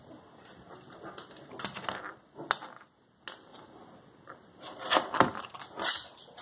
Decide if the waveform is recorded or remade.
recorded